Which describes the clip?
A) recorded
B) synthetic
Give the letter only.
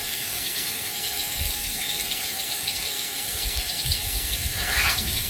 B